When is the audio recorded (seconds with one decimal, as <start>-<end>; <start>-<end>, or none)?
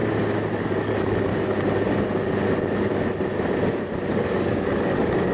0.0-0.6; 1.3-4.1